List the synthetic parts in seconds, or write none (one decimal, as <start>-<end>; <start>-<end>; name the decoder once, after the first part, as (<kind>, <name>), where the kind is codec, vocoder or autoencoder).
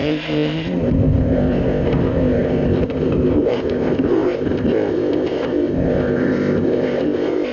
0.0-7.5 (codec, ZipCodec)